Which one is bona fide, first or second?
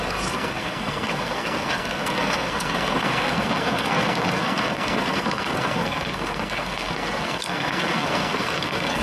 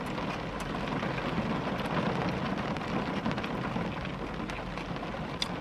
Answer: second